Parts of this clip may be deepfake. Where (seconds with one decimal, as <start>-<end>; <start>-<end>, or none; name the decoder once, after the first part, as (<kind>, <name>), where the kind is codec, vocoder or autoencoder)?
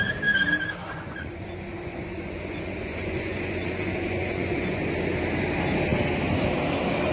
0.8-4.9 (vocoder, Vocos)